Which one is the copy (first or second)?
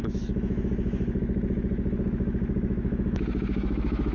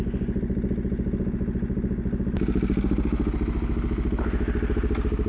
first